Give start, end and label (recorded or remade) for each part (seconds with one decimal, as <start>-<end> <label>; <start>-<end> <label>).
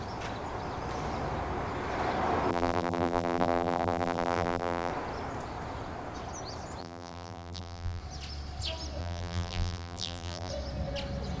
0.0-2.5 recorded; 2.5-4.9 remade; 4.9-6.8 recorded; 6.8-8.0 remade; 8.0-9.0 recorded; 9.0-10.5 remade; 10.5-11.4 recorded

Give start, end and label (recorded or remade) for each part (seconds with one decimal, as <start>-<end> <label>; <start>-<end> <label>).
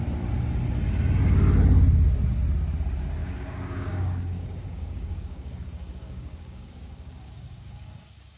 0.0-3.2 recorded; 3.2-8.4 remade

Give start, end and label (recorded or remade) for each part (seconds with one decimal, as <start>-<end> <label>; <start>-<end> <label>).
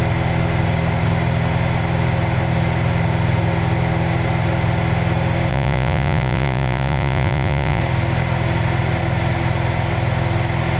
0.0-5.5 recorded; 5.5-7.8 remade; 7.8-10.8 recorded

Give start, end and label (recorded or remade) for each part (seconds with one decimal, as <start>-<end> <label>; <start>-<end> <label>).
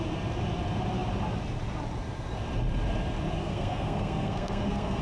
0.0-3.4 recorded; 3.4-5.0 remade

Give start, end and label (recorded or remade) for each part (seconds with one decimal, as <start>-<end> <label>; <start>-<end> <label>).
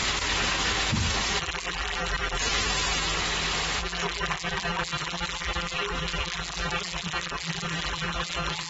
0.0-1.4 recorded; 1.4-2.4 remade; 2.4-3.8 recorded; 3.8-8.7 remade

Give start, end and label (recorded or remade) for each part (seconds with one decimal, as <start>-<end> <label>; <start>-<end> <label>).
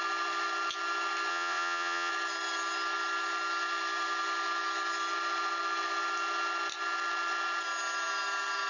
0.0-1.3 recorded; 1.3-2.1 remade; 2.1-8.7 recorded